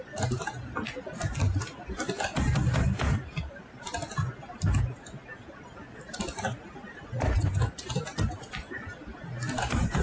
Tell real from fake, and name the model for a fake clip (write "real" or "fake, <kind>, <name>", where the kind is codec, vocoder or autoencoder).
real